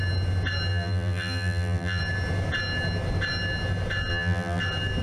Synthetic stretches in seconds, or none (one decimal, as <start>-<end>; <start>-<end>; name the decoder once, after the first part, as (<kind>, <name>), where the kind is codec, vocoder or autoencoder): 0.7-2.0 (vocoder, BigVGAN v2); 4.1-4.6